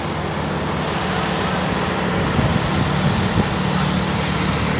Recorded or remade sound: recorded